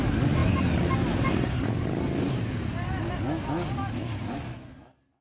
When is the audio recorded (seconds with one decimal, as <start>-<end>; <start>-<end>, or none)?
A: 0.0-5.2